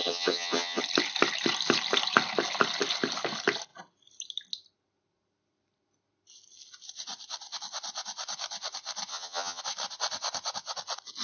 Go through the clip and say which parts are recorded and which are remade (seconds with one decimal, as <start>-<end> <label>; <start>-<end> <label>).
0.0-0.8 remade; 0.8-9.1 recorded; 9.1-9.6 remade; 9.6-11.2 recorded